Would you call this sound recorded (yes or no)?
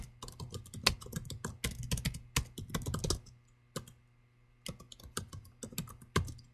yes